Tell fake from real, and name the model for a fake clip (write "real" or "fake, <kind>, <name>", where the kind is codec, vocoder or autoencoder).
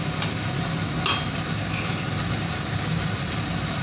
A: real